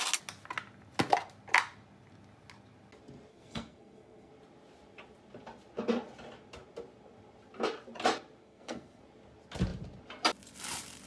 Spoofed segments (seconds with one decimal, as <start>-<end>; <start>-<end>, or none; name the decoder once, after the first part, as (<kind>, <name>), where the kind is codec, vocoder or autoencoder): 3.3-4.3 (codec, SNAC); 8.4-9.0